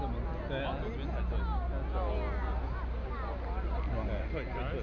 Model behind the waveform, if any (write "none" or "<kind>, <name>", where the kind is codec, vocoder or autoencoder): none